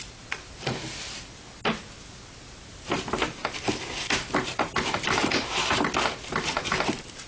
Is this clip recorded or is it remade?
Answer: recorded